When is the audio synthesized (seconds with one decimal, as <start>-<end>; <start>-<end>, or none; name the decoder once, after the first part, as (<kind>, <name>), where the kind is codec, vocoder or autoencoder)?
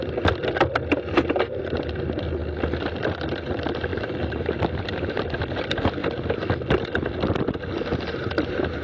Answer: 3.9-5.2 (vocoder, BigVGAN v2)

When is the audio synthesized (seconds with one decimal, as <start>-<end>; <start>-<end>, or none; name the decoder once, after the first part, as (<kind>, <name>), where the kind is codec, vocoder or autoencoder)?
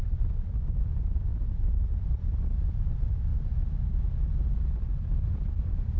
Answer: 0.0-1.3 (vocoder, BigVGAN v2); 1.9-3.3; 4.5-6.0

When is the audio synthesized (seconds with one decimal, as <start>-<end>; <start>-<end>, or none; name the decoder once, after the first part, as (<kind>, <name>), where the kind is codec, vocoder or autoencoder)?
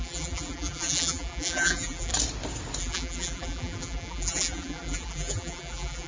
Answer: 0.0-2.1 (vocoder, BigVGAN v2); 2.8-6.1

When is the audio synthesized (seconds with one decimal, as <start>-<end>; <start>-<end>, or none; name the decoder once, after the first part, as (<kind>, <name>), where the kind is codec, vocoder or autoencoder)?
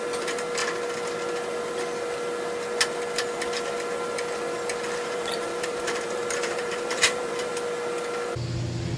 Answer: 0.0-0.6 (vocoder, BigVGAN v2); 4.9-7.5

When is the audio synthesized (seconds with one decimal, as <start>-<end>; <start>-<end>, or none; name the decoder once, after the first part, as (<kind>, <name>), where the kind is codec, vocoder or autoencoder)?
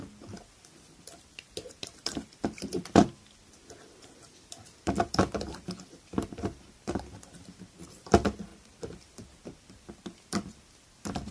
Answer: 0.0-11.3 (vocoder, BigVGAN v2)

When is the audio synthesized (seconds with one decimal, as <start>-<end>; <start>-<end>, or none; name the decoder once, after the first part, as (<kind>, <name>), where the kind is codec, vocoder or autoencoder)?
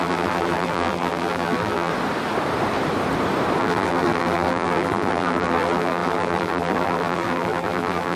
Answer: 0.0-1.9 (vocoder, BigVGAN v2); 3.6-8.2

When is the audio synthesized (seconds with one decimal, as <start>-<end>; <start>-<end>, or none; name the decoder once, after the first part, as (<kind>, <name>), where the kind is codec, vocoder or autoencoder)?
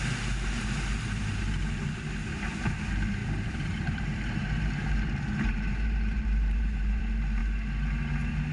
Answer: 3.2-7.0 (vocoder, BigVGAN v2)